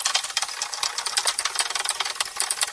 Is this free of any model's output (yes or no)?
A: yes